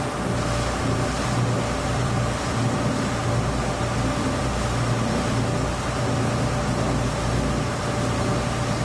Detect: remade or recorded recorded